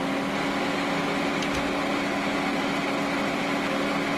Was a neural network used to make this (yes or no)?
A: no